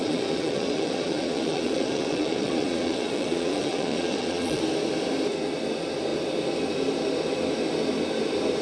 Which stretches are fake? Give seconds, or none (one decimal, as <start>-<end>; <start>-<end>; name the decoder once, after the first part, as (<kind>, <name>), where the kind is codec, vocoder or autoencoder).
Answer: 0.0-4.6 (vocoder, Vocos)